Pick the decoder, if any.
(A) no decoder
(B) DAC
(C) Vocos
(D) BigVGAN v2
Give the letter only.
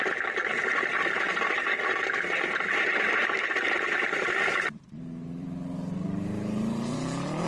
D